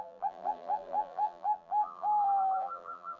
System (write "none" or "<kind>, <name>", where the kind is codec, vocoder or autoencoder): vocoder, BigVGAN v2